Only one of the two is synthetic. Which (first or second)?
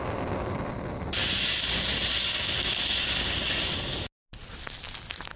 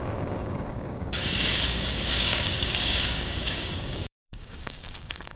second